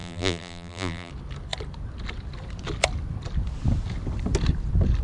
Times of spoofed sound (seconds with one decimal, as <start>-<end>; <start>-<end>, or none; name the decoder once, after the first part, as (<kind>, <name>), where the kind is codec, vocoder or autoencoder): 0.0-1.1 (vocoder, BigVGAN v2)

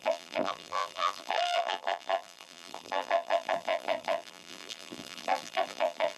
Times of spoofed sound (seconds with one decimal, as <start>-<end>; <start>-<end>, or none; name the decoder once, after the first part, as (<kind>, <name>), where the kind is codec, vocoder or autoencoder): 0.0-6.2 (vocoder, BigVGAN v2)

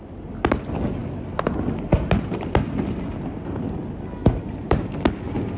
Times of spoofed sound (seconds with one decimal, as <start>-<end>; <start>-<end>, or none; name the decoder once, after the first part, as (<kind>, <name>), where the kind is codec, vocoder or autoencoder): 4.2-4.9 (vocoder, BigVGAN v2)

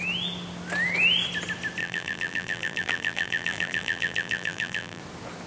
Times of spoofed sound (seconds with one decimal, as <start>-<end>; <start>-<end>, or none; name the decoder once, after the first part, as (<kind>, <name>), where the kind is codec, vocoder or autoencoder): 1.8-5.0 (vocoder, BigVGAN v2)